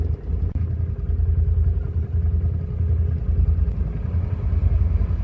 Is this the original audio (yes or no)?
yes